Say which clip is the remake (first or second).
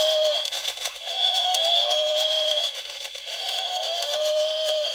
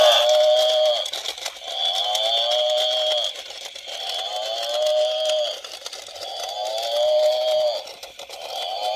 first